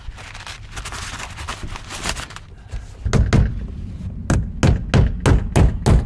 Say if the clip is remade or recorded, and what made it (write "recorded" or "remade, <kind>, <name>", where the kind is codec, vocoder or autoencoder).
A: recorded